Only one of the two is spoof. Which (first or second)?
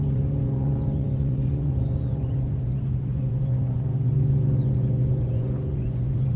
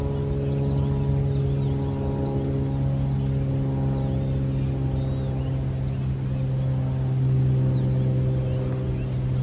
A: first